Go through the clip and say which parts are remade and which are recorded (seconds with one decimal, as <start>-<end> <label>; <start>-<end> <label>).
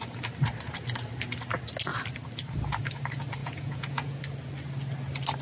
0.0-3.4 recorded; 3.4-4.2 remade; 4.2-5.4 recorded